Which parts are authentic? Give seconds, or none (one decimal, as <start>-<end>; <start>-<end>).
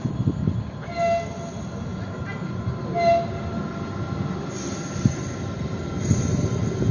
0.0-6.9